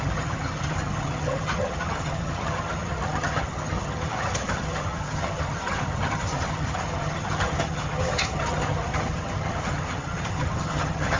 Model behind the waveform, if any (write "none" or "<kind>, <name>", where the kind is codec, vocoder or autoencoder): vocoder, HiFi-GAN